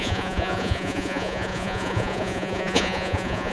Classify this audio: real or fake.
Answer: fake